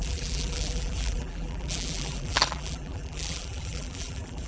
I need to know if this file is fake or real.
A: fake